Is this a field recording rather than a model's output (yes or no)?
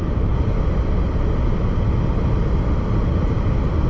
yes